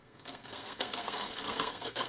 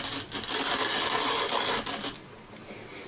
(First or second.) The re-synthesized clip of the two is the first